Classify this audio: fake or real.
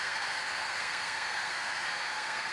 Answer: fake